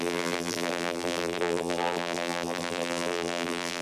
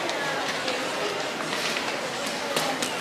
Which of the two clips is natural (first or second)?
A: second